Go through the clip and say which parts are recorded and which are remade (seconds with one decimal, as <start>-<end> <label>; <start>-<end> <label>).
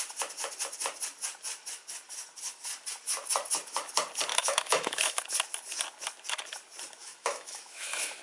0.0-4.3 recorded; 4.3-5.2 remade; 5.2-7.0 recorded; 7.0-8.2 remade